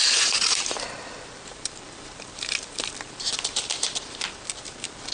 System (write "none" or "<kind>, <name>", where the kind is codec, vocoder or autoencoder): vocoder, BigVGAN v2